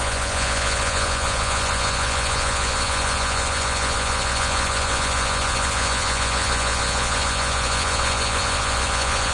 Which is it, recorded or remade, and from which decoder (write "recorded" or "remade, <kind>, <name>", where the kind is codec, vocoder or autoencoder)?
remade, vocoder, Vocos